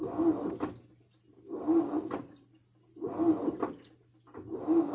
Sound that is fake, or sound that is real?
real